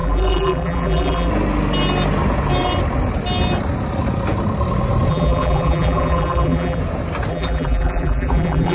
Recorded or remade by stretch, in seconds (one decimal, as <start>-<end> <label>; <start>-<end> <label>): 0.0-1.3 remade; 1.3-5.1 recorded; 5.1-6.8 remade; 6.8-7.3 recorded; 7.3-8.7 remade